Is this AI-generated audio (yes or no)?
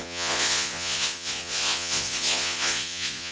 yes